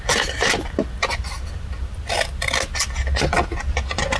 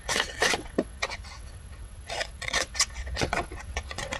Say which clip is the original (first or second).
first